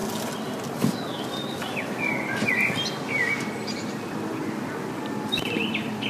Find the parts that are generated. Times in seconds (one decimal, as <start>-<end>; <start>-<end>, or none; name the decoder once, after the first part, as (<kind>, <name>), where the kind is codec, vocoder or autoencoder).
0.0-2.7 (vocoder, BigVGAN v2); 4.4-6.1